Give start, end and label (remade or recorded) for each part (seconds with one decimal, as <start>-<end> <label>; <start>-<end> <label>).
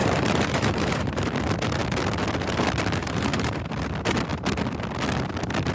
0.0-1.3 remade; 1.3-3.0 recorded; 3.0-3.7 remade; 3.7-5.7 recorded